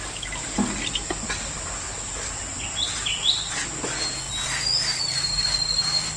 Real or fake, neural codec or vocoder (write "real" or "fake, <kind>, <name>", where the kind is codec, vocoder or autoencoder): real